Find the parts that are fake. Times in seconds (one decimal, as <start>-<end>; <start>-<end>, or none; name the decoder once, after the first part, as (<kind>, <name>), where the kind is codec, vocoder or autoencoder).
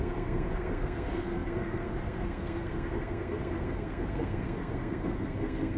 0.0-5.8 (codec, SNAC)